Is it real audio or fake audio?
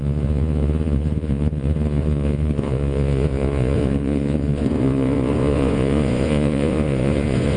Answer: fake